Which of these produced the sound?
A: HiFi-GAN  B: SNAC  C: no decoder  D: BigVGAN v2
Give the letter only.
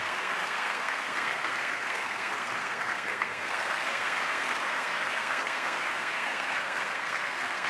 B